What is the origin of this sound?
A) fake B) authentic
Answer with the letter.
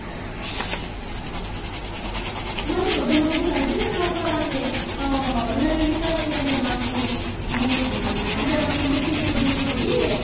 B